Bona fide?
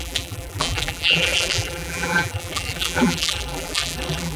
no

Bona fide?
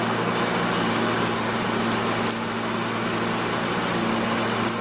yes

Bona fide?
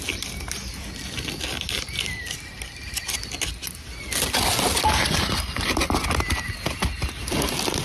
yes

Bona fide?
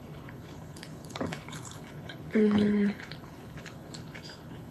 no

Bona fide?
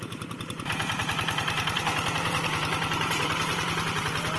no